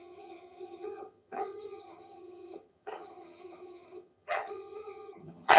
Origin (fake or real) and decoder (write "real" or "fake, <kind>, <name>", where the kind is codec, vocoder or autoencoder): fake, vocoder, HiFi-GAN